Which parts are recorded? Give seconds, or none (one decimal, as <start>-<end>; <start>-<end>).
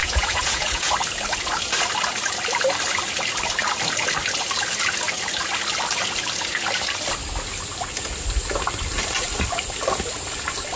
0.9-10.8